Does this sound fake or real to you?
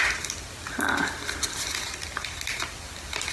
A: real